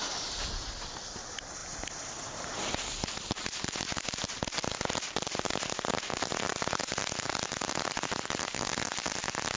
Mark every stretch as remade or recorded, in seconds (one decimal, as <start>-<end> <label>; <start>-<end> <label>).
0.0-9.6 recorded